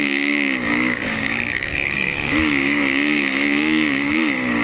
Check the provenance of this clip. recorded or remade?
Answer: remade